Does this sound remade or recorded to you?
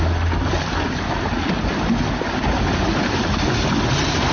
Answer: recorded